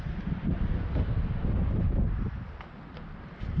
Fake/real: real